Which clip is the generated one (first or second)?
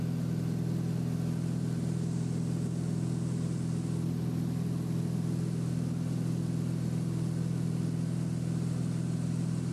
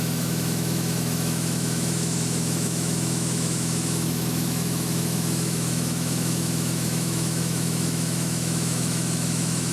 second